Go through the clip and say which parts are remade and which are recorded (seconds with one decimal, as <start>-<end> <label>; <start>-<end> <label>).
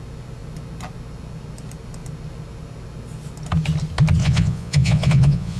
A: 0.0-4.2 recorded; 4.2-5.6 remade